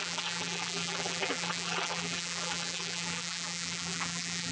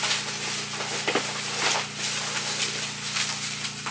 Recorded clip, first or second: second